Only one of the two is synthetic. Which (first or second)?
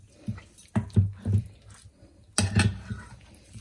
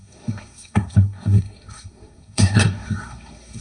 second